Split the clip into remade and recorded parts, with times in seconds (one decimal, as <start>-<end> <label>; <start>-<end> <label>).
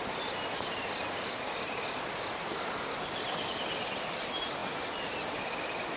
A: 0.0-6.0 recorded